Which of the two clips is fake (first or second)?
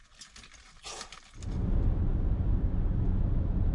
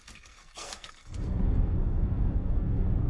second